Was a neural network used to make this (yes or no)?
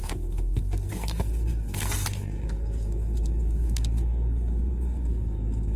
yes